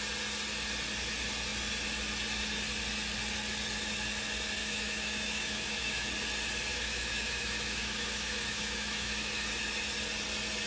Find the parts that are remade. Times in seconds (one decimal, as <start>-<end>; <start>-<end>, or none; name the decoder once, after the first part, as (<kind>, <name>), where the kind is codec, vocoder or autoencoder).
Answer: 4.6-6.1 (autoencoder, DAC-VAE); 6.7-9.5